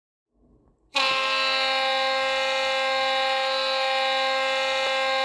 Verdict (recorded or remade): recorded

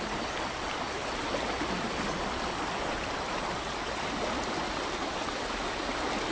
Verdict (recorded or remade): recorded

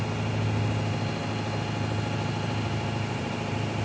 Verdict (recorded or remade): recorded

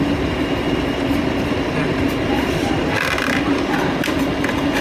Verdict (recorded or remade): recorded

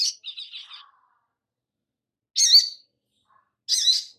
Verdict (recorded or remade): recorded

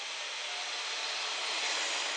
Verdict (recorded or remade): recorded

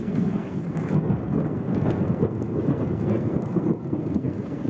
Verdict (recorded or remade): remade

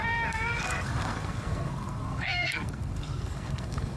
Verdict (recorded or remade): remade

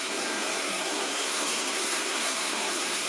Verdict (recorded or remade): remade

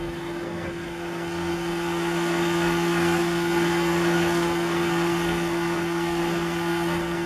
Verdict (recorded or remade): remade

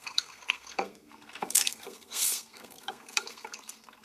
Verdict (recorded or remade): remade